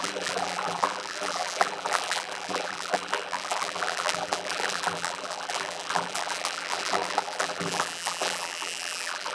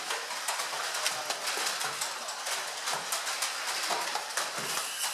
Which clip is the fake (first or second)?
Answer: first